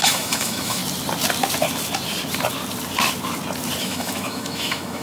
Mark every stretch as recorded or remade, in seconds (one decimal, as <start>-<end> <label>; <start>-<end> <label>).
0.0-0.8 remade; 0.8-3.8 recorded; 3.8-5.0 remade